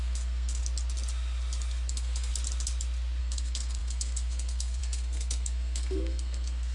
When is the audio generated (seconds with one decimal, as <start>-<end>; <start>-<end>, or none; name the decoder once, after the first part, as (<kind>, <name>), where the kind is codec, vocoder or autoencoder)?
0.0-0.6 (codec, SNAC); 1.9-2.3; 3.2-6.7